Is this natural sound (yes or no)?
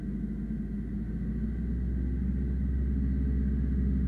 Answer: yes